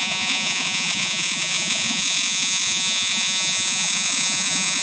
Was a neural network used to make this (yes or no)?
yes